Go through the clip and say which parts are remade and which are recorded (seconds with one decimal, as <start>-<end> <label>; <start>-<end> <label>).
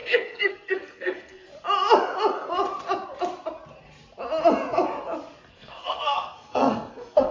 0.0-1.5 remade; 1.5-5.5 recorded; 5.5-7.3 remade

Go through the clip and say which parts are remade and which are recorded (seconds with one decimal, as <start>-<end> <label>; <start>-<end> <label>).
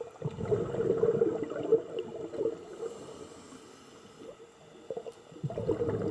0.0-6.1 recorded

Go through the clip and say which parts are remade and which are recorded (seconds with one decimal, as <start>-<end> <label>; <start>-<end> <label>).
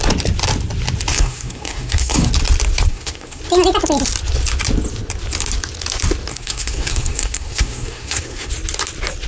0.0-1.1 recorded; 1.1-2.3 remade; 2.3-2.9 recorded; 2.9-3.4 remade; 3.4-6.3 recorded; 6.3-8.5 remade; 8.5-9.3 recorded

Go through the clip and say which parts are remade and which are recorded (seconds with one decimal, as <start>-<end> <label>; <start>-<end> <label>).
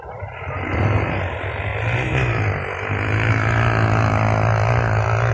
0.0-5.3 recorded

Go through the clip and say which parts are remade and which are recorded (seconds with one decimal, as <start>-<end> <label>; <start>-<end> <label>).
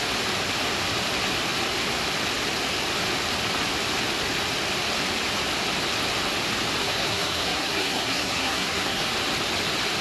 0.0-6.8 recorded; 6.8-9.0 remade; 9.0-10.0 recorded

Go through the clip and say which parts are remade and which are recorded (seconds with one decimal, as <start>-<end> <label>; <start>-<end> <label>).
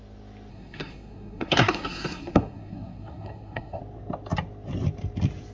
0.0-0.5 recorded; 0.5-3.8 remade; 3.8-5.5 recorded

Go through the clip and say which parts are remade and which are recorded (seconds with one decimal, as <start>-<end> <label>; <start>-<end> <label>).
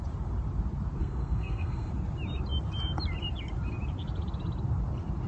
0.0-1.0 recorded; 1.0-1.9 remade; 1.9-5.3 recorded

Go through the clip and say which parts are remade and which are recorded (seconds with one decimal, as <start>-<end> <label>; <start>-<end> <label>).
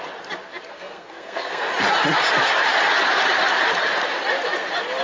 0.0-0.7 recorded; 0.7-1.7 remade; 1.7-5.0 recorded